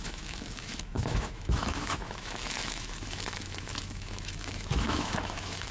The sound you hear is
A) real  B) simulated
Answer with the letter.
B